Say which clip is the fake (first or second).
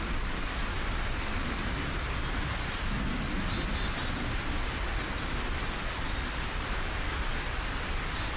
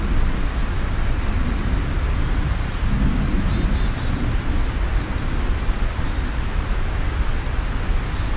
first